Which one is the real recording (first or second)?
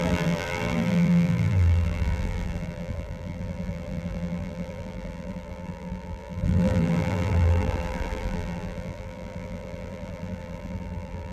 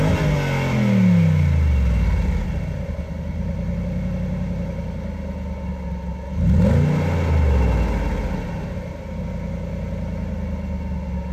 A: second